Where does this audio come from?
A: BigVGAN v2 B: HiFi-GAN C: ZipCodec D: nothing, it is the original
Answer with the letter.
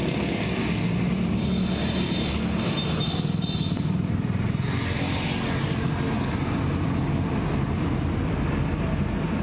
D